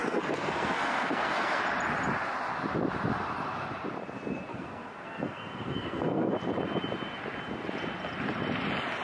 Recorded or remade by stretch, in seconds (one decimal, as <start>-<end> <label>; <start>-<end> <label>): 0.0-1.6 remade; 1.6-4.5 recorded; 4.5-6.3 remade; 6.3-9.0 recorded